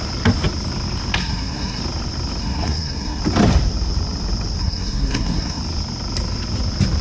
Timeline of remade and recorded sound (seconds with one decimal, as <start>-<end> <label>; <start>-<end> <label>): 0.0-1.2 recorded; 1.2-1.8 remade; 1.8-2.4 recorded; 2.4-3.2 remade; 3.2-4.6 recorded; 4.6-5.6 remade; 5.6-7.0 recorded